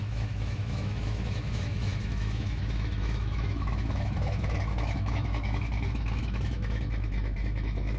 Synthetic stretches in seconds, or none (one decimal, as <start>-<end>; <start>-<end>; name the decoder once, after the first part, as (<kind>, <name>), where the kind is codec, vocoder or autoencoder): 0.0-8.0 (autoencoder, DAC-VAE)

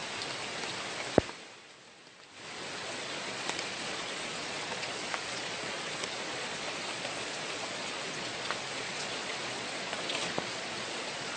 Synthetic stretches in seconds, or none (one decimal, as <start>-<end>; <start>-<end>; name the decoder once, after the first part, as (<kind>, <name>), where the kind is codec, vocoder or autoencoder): 2.8-11.4 (vocoder, Vocos)

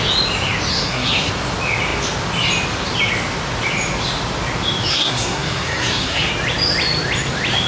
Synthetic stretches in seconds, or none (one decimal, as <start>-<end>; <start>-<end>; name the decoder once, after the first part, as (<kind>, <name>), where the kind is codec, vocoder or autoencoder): 0.7-1.3 (codec, SNAC); 4.9-6.3